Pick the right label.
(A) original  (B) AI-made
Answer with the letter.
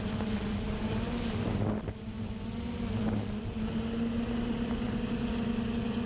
A